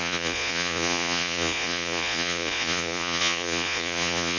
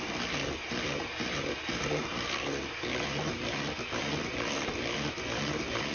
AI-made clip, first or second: first